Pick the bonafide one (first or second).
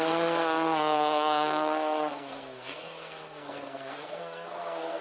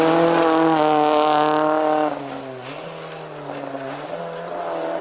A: second